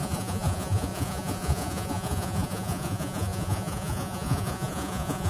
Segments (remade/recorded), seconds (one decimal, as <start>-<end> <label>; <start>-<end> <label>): 0.0-5.3 remade